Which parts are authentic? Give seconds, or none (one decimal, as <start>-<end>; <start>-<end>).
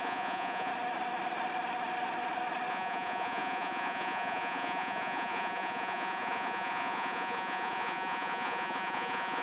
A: 0.7-2.7